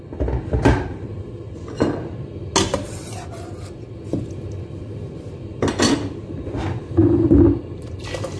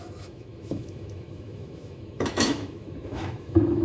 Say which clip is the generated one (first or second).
second